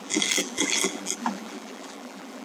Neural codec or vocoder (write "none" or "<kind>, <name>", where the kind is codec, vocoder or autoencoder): vocoder, BigVGAN v2